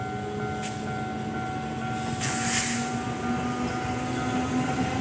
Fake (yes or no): no